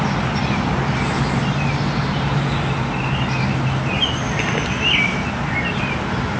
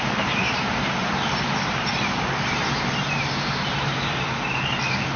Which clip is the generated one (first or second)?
second